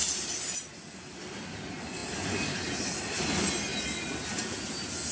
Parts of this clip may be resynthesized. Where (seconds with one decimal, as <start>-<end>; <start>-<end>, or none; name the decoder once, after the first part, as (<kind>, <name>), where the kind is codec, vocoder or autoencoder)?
none